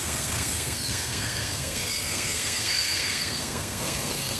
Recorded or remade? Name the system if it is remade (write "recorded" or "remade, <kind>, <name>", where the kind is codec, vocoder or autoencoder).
remade, codec, SNAC